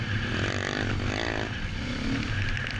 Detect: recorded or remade recorded